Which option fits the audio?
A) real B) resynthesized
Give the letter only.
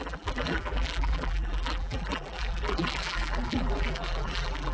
B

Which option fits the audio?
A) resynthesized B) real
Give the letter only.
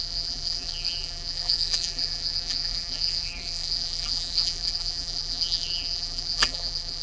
A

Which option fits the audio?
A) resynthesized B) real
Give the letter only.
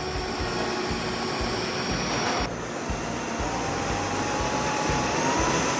B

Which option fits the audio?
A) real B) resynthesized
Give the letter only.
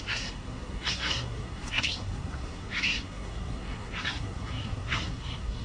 B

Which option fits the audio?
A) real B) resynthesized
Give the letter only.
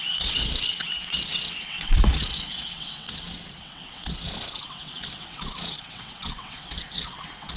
B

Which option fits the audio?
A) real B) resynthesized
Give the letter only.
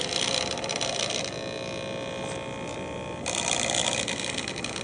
A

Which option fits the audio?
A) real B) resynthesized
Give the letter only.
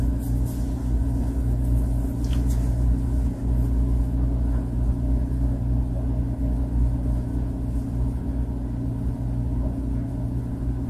A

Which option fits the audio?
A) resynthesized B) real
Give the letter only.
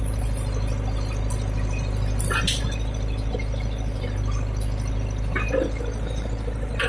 B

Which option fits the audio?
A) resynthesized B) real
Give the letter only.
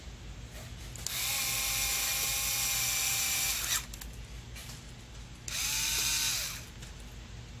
B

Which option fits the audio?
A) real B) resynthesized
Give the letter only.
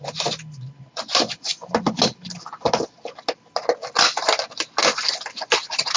A